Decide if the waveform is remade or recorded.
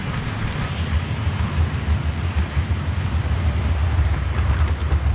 recorded